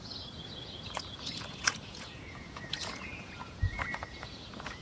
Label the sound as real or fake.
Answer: fake